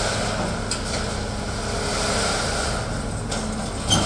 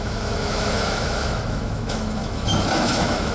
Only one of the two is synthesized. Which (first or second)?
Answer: second